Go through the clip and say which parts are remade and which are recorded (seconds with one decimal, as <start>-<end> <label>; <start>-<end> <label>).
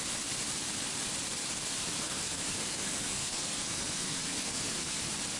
0.0-1.8 recorded; 1.8-5.0 remade; 5.0-5.4 recorded